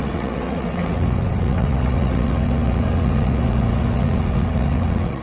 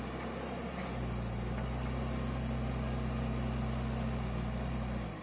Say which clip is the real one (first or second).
second